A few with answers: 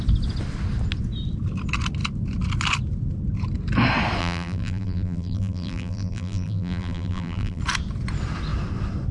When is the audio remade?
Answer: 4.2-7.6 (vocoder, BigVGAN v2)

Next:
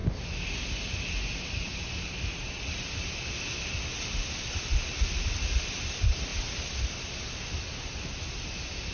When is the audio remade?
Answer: none